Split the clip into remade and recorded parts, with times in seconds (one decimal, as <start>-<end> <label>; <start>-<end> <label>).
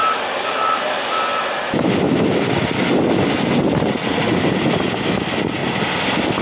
0.0-6.4 recorded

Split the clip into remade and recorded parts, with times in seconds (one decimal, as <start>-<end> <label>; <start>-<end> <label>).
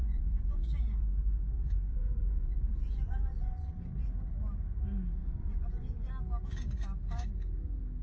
0.0-3.7 remade; 3.7-5.2 recorded; 5.2-6.1 remade; 6.1-8.0 recorded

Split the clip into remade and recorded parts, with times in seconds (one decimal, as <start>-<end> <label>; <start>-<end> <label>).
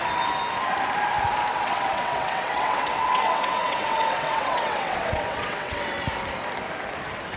0.0-1.5 recorded; 1.5-5.9 remade; 5.9-7.4 recorded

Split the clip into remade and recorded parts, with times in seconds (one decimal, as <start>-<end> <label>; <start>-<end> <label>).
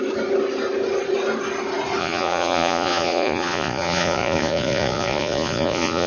0.0-2.0 recorded; 2.0-6.1 remade